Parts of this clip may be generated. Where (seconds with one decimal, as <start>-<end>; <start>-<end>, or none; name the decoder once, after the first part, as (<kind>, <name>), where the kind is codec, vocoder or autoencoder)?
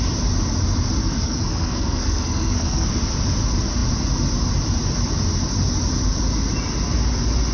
1.0-2.9 (codec, SNAC)